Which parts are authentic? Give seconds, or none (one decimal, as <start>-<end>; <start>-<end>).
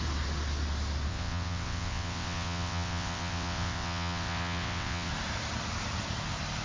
0.0-1.1; 5.1-6.6